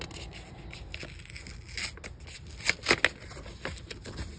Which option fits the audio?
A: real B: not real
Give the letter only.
A